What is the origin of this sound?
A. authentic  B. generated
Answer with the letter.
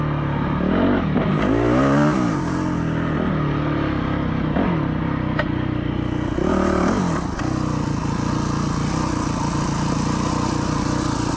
A